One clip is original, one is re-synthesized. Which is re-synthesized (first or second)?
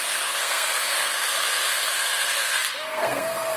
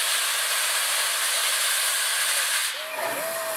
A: first